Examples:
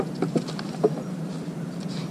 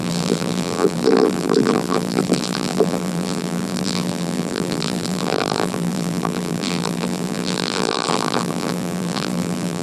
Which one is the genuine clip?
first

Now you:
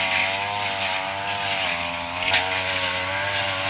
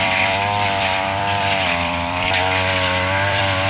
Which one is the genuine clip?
first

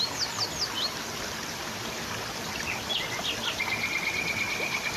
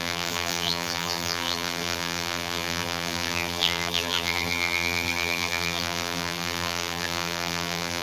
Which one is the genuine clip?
first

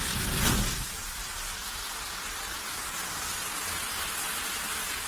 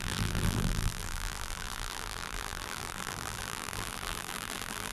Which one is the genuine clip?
first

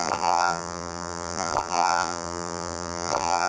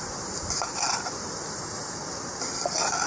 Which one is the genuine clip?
second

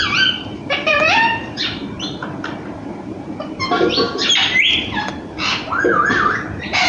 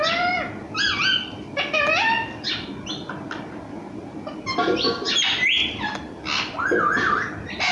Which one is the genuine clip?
second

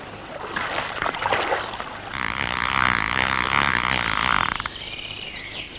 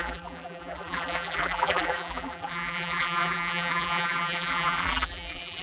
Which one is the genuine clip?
first